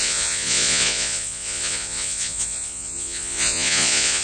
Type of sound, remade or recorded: remade